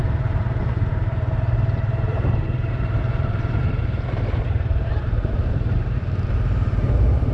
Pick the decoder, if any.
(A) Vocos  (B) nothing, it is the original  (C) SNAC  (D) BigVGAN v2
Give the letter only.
D